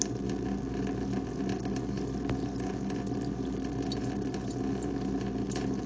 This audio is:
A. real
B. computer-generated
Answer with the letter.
A